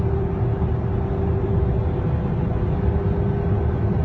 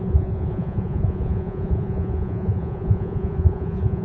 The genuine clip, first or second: first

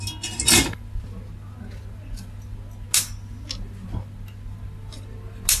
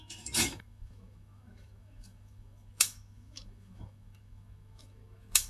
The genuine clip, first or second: first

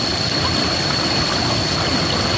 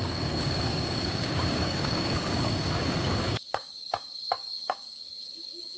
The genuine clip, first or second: first